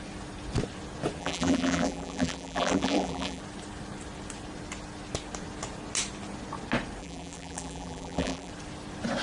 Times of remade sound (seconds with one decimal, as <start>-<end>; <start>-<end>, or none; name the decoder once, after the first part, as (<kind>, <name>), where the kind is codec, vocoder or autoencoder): 1.2-3.4 (vocoder, BigVGAN v2); 7.0-8.5